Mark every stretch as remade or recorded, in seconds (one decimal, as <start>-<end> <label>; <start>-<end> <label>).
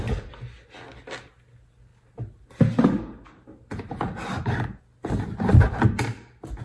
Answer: 0.0-6.6 recorded